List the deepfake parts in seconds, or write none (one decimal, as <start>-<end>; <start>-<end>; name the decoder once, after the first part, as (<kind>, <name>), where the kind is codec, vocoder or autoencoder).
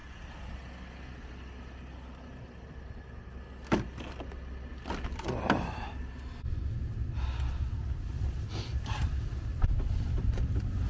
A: 4.7-10.9 (vocoder, BigVGAN v2)